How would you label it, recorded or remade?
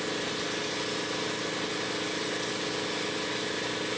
recorded